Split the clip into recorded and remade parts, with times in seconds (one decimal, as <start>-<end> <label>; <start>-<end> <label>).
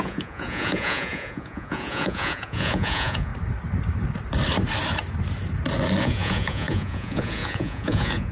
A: 0.0-3.3 remade; 3.3-6.0 recorded; 6.0-8.3 remade